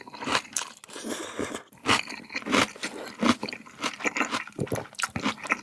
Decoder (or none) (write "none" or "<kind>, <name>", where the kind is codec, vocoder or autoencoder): none